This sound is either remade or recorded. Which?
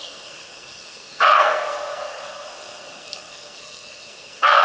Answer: remade